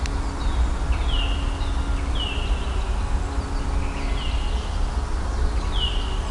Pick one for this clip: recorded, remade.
recorded